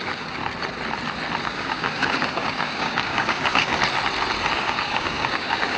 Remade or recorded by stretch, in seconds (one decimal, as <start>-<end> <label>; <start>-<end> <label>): 0.0-0.4 remade; 0.4-1.4 recorded; 1.4-3.7 remade; 3.7-4.5 recorded; 4.5-5.8 remade